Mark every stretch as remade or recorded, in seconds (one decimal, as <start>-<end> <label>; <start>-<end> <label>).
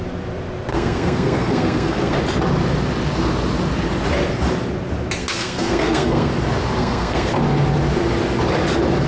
0.0-0.7 recorded; 0.7-2.2 remade; 2.2-5.2 recorded; 5.2-6.3 remade; 6.3-6.8 recorded; 6.8-7.3 remade; 7.3-9.1 recorded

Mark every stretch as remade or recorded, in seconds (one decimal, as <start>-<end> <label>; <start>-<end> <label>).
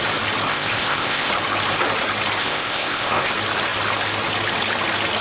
0.0-0.5 recorded; 0.5-1.3 remade; 1.3-2.4 recorded; 2.4-3.3 remade; 3.3-5.2 recorded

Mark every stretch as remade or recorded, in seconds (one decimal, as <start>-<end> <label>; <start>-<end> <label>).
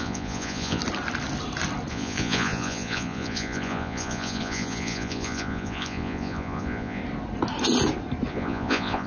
0.0-0.8 remade; 0.8-1.9 recorded; 1.9-7.0 remade; 7.0-8.3 recorded; 8.3-9.1 remade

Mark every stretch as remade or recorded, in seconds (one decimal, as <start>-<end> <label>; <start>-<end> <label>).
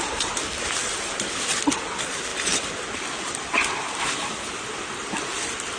0.0-5.8 remade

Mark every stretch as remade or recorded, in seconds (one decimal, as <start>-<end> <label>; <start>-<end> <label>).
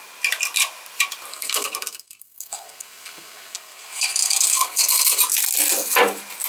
0.0-1.3 recorded; 1.3-5.2 remade; 5.2-6.5 recorded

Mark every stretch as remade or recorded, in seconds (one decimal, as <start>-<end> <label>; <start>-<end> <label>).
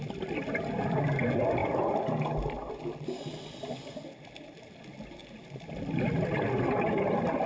0.0-7.5 recorded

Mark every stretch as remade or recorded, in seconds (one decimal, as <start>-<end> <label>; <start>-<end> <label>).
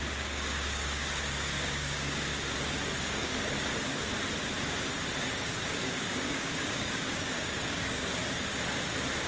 0.0-2.3 remade; 2.3-3.0 recorded; 3.0-3.7 remade; 3.7-5.2 recorded; 5.2-8.2 remade; 8.2-9.3 recorded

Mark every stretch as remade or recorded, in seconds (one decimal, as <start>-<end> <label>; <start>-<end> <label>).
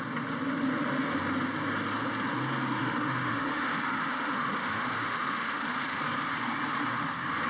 0.0-2.8 recorded; 2.8-6.0 remade; 6.0-7.5 recorded